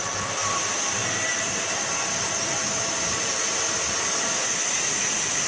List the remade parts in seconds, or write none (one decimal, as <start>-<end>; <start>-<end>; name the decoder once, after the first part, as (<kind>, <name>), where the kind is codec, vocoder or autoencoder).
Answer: none